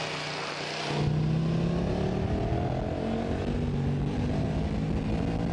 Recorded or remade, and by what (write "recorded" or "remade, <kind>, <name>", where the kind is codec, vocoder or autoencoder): recorded